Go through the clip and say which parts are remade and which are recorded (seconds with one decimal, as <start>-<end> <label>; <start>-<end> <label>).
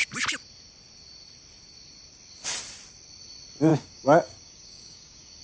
0.0-3.7 recorded; 3.7-5.4 remade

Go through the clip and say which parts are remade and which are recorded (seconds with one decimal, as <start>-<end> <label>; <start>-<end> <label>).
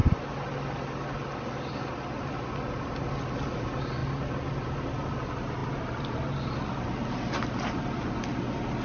0.0-8.8 recorded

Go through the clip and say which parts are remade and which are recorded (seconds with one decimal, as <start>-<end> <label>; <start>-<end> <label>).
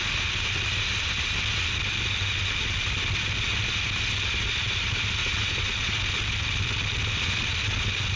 0.0-8.2 recorded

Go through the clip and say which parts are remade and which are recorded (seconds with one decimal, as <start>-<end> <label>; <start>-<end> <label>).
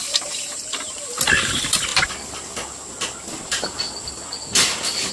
0.0-1.9 remade; 1.9-5.1 recorded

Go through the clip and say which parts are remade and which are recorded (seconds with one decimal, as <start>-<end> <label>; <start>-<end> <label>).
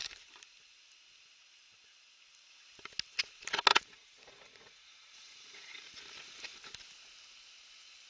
0.0-3.7 recorded; 3.7-6.0 remade; 6.0-8.1 recorded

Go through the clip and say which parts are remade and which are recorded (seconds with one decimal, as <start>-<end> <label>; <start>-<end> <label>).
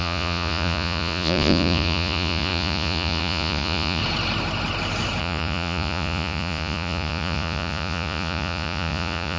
0.0-4.0 remade; 4.0-5.2 recorded; 5.2-9.4 remade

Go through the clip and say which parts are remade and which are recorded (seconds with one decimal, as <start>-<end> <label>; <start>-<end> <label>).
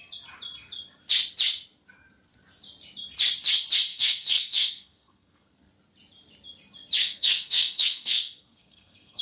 0.0-3.9 recorded; 3.9-5.7 remade; 5.7-7.0 recorded; 7.0-9.2 remade